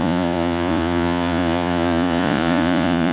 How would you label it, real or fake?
fake